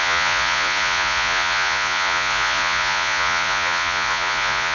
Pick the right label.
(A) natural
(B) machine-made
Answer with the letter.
B